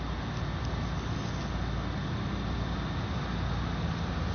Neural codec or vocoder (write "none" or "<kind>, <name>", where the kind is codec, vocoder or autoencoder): none